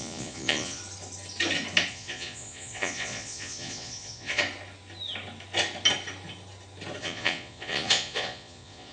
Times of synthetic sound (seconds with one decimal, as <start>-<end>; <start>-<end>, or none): 0.0-0.8; 1.9-4.4; 7.0-8.9